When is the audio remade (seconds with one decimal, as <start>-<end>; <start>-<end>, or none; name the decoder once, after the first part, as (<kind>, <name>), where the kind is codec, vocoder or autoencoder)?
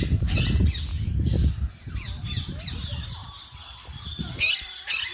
0.9-1.5 (codec, DAC)